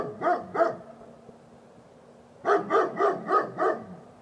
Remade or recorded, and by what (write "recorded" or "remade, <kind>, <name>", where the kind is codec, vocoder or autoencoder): recorded